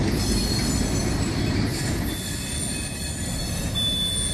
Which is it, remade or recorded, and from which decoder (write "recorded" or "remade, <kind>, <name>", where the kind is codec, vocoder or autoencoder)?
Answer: recorded